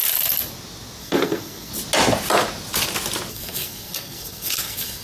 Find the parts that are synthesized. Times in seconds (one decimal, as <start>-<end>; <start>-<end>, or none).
1.0-1.7; 3.3-5.0